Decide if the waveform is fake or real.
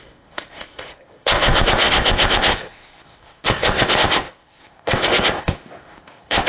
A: fake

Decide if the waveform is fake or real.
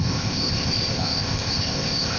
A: fake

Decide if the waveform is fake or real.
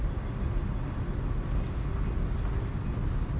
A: real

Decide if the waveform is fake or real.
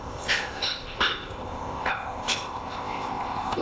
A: fake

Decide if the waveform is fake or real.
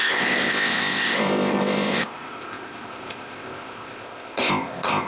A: fake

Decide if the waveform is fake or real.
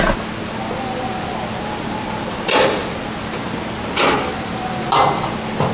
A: real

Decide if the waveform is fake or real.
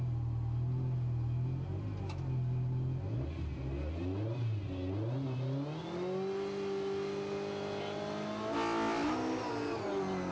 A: real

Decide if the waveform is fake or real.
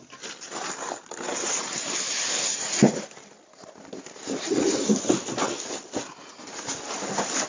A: real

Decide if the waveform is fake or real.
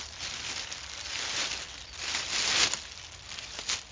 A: real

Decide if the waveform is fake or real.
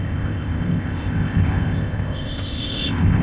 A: fake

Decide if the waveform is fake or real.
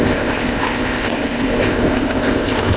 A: fake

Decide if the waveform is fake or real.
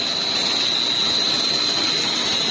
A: real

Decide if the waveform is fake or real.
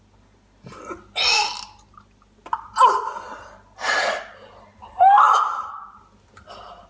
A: real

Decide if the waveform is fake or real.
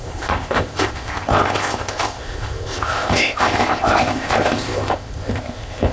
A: fake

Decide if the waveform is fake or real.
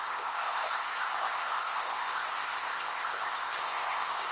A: fake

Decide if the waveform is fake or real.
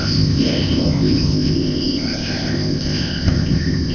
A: fake